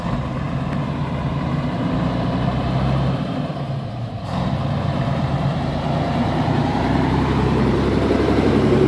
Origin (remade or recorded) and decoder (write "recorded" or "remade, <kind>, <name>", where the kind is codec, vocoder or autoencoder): remade, vocoder, BigVGAN v2